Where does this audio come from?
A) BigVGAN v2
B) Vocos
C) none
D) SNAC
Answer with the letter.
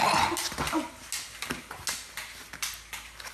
C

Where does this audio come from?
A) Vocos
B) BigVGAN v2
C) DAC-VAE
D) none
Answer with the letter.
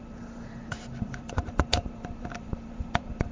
B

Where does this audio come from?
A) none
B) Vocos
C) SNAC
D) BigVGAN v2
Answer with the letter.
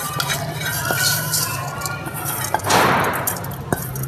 A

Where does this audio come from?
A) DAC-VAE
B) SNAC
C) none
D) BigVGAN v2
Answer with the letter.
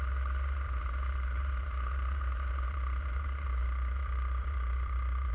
D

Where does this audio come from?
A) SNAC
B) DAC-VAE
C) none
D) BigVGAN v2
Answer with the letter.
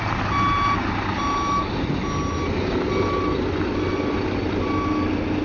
C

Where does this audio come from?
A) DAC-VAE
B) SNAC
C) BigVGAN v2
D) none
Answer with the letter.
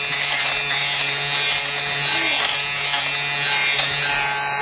D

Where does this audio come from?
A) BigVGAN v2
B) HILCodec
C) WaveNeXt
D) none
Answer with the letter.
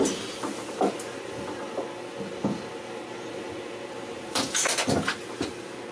D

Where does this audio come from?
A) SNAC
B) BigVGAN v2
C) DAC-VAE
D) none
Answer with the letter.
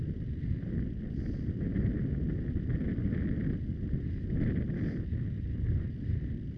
D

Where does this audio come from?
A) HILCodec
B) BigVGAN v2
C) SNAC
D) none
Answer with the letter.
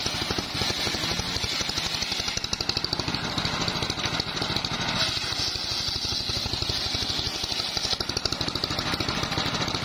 D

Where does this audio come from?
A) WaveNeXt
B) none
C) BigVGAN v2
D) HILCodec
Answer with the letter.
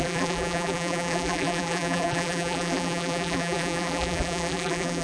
C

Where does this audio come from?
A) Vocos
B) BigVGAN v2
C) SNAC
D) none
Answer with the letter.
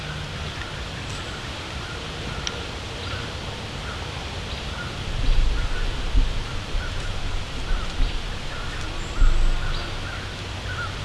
D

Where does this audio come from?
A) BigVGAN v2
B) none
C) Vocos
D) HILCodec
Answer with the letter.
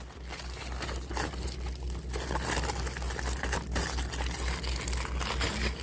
B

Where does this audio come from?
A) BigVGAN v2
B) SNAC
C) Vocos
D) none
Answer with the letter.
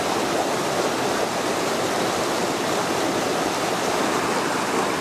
D